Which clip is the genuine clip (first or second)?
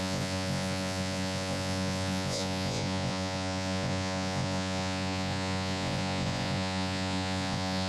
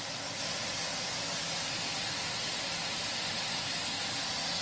second